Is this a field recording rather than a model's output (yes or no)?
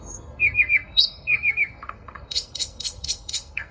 no